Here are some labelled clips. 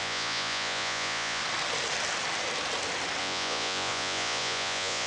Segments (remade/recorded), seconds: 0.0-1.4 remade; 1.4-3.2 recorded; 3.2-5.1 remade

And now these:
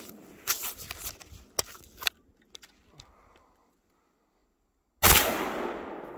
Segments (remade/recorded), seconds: 0.0-6.2 recorded

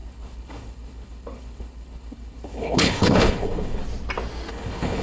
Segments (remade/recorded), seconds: 0.0-3.8 remade; 3.8-4.5 recorded; 4.5-5.0 remade

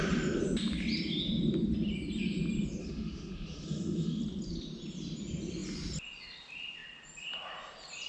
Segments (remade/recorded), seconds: 0.0-2.8 recorded; 2.8-4.2 remade; 4.2-8.1 recorded

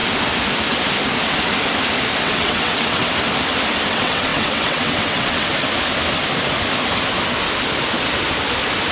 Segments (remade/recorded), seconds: 0.0-2.2 recorded; 2.2-3.0 remade; 3.0-3.9 recorded; 3.9-5.5 remade; 5.5-8.9 recorded

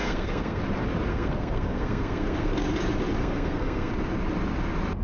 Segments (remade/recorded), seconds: 0.0-0.6 remade; 0.6-1.1 recorded; 1.1-2.5 remade; 2.5-3.2 recorded; 3.2-3.9 remade; 3.9-5.0 recorded

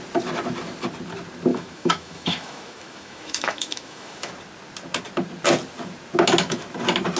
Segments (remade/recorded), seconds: 0.0-1.5 recorded; 1.5-4.3 remade; 4.3-7.2 recorded

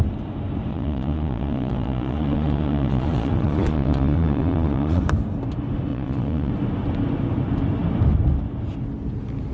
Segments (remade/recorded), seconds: 0.0-0.7 recorded; 0.7-5.0 remade; 5.0-5.9 recorded; 5.9-6.5 remade; 6.5-9.5 recorded